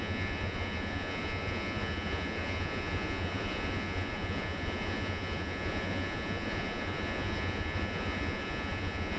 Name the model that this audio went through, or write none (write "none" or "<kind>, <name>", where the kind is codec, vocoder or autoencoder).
vocoder, Vocos